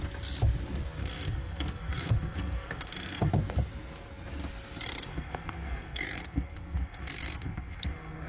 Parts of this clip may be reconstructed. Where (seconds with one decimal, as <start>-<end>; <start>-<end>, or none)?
1.0-3.3; 5.1-8.3